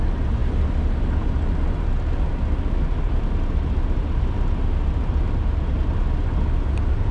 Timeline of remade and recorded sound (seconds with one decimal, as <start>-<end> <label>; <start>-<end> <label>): 0.0-7.1 recorded